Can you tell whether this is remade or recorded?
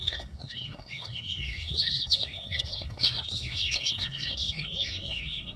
remade